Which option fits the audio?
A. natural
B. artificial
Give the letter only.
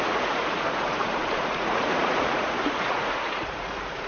B